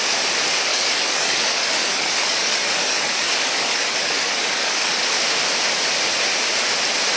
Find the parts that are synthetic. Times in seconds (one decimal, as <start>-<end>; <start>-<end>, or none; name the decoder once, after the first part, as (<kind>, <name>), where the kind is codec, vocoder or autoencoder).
0.7-5.0 (codec, DAC)